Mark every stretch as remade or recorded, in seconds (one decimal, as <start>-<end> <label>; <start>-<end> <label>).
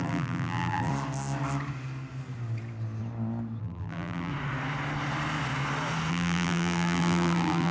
0.0-0.9 remade; 0.9-3.6 recorded; 3.6-4.3 remade; 4.3-6.1 recorded; 6.1-7.7 remade